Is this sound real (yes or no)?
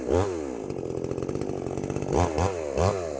yes